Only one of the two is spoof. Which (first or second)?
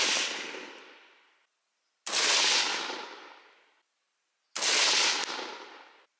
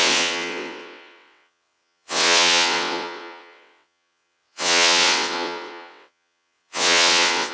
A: second